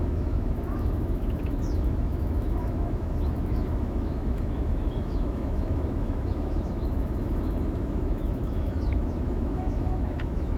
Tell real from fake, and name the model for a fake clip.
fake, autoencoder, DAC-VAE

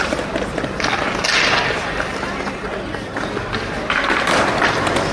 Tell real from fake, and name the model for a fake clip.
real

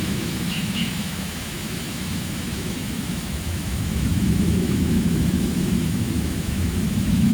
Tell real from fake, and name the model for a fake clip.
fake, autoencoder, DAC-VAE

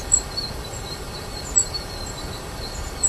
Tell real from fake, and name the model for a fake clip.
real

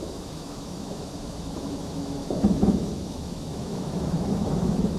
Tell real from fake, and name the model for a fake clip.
fake, autoencoder, DAC-VAE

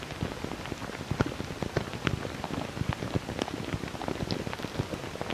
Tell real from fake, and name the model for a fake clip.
real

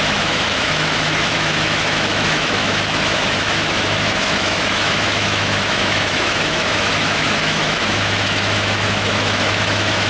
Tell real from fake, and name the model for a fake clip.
fake, autoencoder, DAC-VAE